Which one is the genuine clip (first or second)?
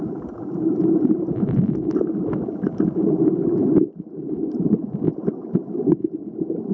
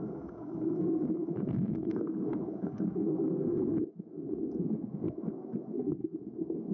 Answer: first